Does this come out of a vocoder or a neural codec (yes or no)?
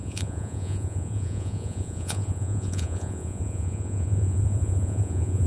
yes